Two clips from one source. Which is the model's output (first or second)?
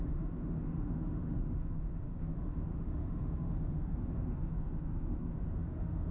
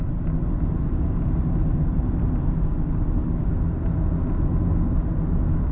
first